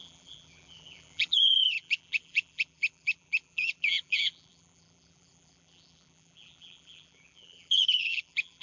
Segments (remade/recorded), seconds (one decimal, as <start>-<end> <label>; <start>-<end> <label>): 0.0-8.6 remade